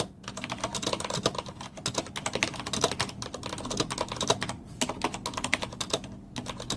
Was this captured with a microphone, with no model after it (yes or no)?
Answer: yes